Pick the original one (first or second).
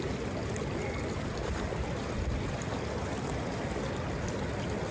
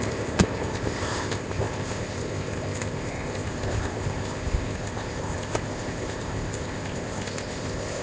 first